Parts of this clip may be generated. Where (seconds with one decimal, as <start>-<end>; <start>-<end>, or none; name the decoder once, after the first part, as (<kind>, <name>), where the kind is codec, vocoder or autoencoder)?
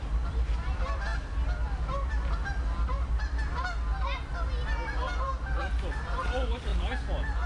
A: 0.0-1.1 (vocoder, BigVGAN v2); 5.6-6.7